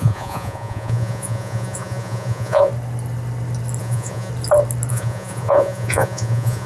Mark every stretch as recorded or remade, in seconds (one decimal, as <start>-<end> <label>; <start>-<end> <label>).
0.0-2.7 remade; 2.7-3.8 recorded; 3.8-4.3 remade; 4.3-4.9 recorded; 4.9-6.7 remade